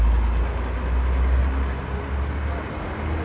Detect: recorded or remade recorded